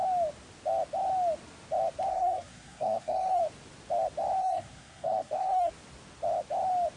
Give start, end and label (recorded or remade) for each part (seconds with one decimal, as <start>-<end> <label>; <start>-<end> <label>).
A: 0.0-2.1 recorded; 2.1-3.4 remade; 3.4-4.4 recorded; 4.4-5.7 remade; 5.7-7.0 recorded